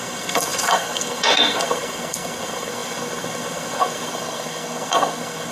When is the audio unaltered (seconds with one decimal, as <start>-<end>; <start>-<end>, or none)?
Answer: none

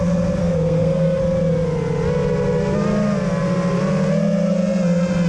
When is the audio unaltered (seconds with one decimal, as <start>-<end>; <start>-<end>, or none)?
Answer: 0.0-0.4; 1.2-5.3

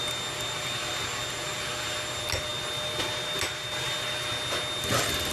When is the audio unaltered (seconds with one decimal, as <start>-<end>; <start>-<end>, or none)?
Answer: 0.0-5.3

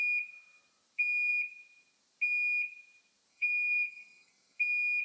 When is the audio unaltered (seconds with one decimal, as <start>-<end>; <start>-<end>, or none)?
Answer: 0.0-3.3; 4.6-5.0

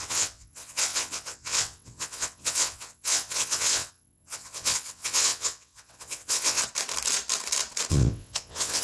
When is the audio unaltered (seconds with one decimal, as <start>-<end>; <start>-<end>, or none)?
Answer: 6.6-7.9

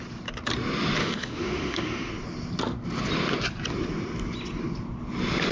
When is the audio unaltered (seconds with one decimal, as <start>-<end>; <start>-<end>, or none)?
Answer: 0.0-1.0; 2.1-5.5

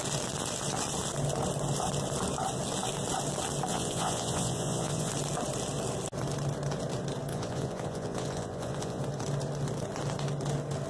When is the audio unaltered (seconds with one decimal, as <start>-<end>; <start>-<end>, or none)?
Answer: 0.0-3.7; 5.1-7.3; 9.0-10.9